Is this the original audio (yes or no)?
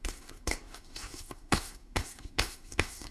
no